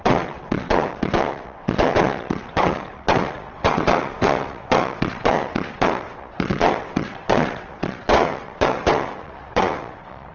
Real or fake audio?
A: fake